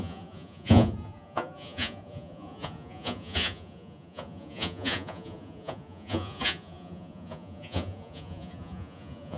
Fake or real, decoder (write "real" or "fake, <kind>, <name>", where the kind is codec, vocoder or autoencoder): fake, vocoder, Vocos